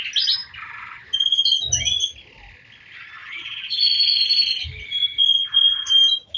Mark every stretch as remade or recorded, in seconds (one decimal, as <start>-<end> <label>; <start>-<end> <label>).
0.0-3.2 recorded; 3.2-4.3 remade; 4.3-5.0 recorded; 5.0-5.9 remade; 5.9-6.4 recorded